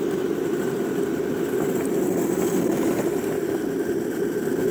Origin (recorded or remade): recorded